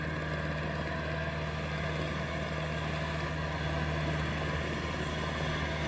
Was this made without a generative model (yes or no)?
yes